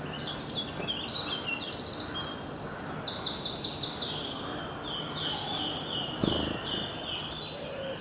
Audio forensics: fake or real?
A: real